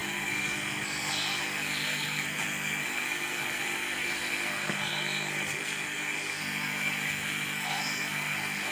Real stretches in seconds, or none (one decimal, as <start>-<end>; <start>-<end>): none